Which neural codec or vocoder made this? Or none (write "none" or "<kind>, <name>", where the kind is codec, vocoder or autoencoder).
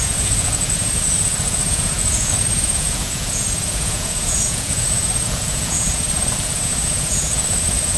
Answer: vocoder, Vocos